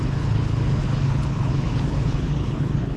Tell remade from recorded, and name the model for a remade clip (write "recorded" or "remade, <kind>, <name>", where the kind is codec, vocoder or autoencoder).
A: remade, codec, HILCodec